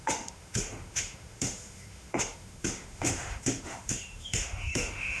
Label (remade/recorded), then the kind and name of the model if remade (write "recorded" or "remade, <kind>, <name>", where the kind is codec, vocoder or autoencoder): remade, autoencoder, DAC-VAE